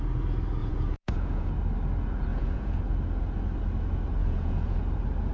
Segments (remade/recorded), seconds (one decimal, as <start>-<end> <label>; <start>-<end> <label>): 0.0-0.6 recorded; 0.6-1.5 remade; 1.5-2.3 recorded; 2.3-2.8 remade; 2.8-4.2 recorded; 4.2-4.8 remade; 4.8-5.3 recorded